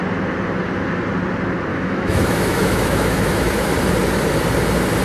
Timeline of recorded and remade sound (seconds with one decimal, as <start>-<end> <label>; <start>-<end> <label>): 0.0-1.7 recorded; 1.7-3.7 remade; 3.7-5.0 recorded